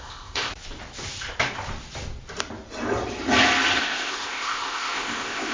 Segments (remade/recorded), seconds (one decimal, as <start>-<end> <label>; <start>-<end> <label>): 0.0-0.5 remade; 0.5-3.8 recorded; 3.8-5.5 remade